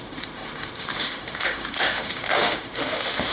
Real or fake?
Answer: fake